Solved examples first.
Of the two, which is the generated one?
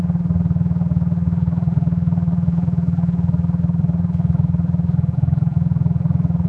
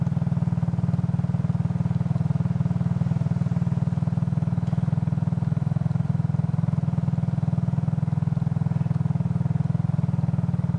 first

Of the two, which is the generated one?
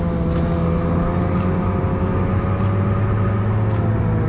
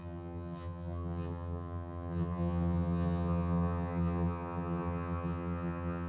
second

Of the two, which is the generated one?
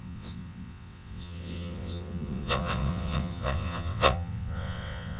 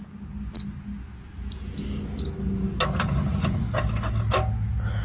first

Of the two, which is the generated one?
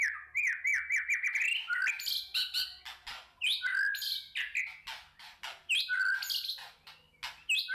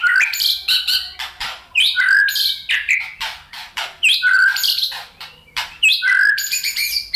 second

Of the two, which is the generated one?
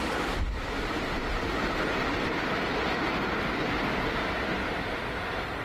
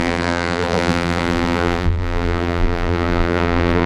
second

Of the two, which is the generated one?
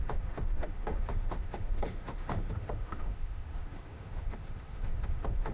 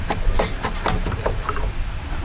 first